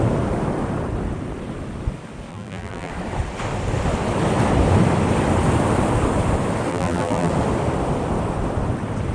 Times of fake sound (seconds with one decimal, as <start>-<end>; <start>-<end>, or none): 2.3-2.9; 6.7-7.3